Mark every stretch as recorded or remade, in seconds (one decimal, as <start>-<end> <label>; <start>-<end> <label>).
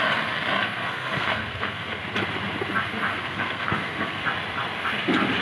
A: 0.0-0.6 recorded; 0.6-2.0 remade; 2.0-3.1 recorded; 3.1-4.2 remade; 4.2-5.4 recorded